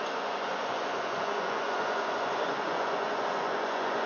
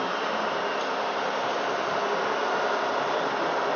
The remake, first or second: first